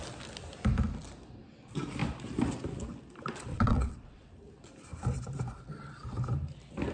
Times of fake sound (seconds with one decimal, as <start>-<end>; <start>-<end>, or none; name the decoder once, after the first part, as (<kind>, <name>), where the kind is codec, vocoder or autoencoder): 3.5-4.3 (vocoder, WaveNeXt)